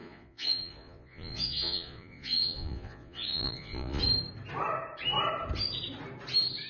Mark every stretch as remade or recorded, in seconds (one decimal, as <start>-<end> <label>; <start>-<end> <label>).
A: 0.0-4.0 remade; 4.0-6.7 recorded